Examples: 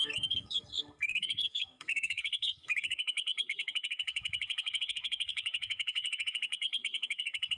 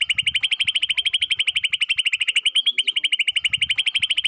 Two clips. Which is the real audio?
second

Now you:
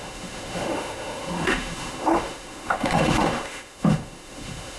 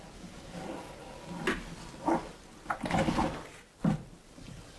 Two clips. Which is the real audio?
second